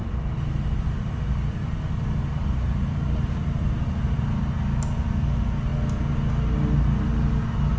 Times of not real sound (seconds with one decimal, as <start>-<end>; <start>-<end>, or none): 0.0-4.5